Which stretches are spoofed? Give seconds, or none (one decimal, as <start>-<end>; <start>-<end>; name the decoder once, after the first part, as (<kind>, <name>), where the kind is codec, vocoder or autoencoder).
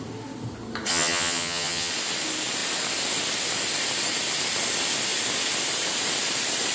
0.9-1.9 (vocoder, HiFi-GAN)